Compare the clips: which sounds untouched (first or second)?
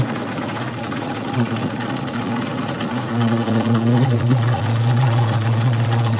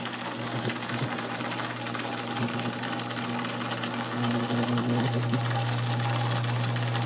second